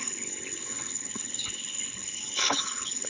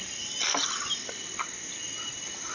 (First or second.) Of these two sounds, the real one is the second